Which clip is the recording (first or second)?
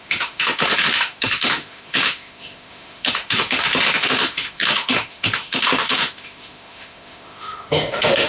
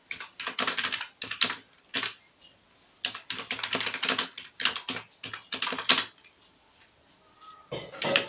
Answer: second